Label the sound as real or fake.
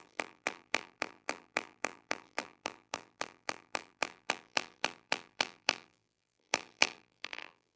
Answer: fake